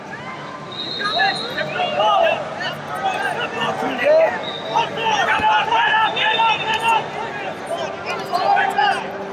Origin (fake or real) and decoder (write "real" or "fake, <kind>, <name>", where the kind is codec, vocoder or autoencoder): real